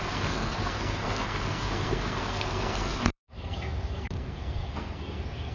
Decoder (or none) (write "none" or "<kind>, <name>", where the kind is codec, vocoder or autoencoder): codec, SNAC